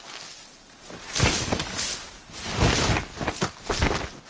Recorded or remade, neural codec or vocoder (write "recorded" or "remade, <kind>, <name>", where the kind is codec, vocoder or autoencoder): recorded